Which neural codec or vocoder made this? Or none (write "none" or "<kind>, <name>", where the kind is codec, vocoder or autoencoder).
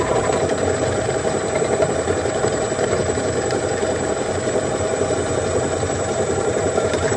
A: vocoder, BigVGAN v2